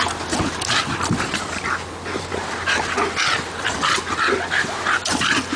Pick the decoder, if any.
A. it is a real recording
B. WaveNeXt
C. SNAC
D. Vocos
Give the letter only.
A